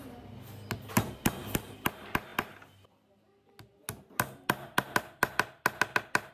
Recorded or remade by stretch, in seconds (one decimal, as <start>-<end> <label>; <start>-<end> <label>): 0.0-6.3 recorded